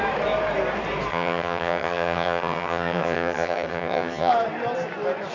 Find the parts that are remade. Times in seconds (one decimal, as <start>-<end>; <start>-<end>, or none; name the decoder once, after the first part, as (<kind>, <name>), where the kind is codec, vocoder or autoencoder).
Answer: 1.1-4.3 (vocoder, HiFi-GAN)